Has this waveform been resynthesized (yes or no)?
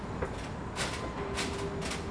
no